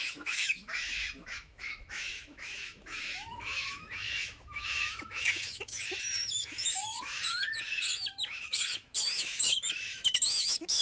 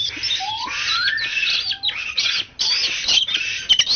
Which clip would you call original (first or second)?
second